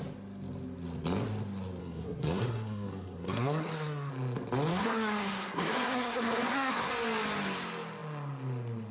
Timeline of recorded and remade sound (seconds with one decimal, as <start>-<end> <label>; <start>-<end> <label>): 0.0-1.8 recorded; 1.8-4.1 remade; 4.1-4.7 recorded; 4.7-6.9 remade; 6.9-8.9 recorded